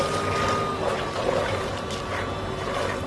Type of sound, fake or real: fake